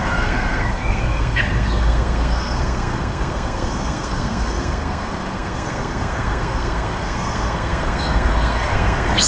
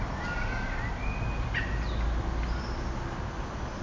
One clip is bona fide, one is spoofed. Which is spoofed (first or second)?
first